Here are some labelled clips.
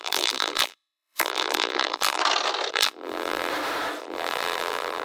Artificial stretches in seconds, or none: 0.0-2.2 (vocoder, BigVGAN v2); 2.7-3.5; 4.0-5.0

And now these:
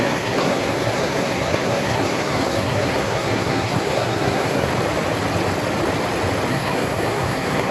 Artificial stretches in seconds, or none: 0.0-4.7 (codec, SNAC); 6.5-7.7

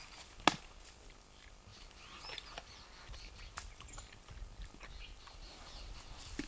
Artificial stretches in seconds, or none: none

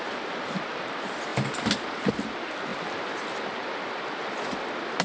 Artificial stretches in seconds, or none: none

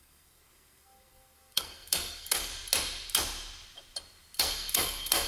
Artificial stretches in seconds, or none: 0.0-2.5 (codec, SNAC); 4.4-5.3

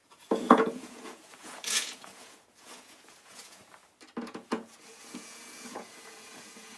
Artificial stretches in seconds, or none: 0.0-3.6 (vocoder, Vocos); 4.2-6.8

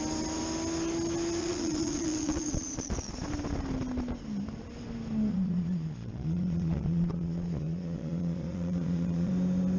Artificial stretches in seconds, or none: 1.4-3.1 (vocoder, Vocos); 5.3-9.3